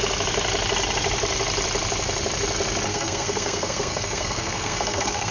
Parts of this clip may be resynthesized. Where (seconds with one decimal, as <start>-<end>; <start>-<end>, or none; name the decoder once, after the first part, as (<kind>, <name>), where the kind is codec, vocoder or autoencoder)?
2.9-5.3 (codec, SNAC)